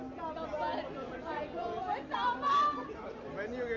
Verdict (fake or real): real